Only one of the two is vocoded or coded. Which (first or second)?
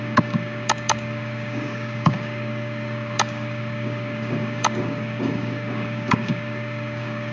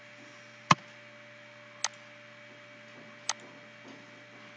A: first